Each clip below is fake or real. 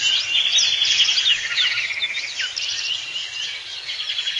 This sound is real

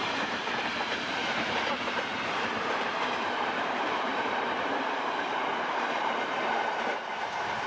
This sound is fake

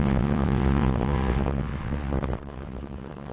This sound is fake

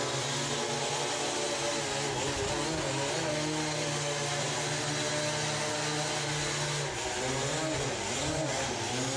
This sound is real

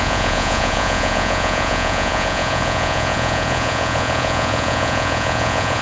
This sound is fake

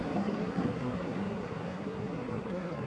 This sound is fake